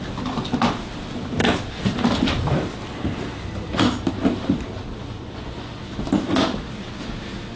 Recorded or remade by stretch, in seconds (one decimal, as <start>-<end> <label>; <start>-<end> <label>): 0.0-5.0 recorded; 5.0-5.8 remade; 5.8-7.6 recorded